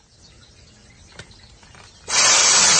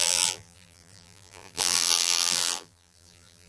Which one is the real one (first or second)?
first